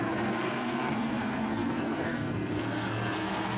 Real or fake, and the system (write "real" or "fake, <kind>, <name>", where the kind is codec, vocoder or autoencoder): fake, codec, SNAC